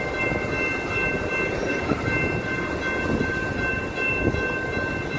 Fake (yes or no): no